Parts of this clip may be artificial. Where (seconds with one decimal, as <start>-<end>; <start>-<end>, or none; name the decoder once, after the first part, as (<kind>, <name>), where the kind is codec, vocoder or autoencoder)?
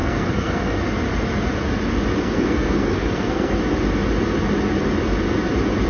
0.0-0.8 (codec, SNAC); 2.2-3.6